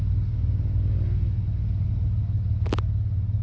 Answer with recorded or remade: recorded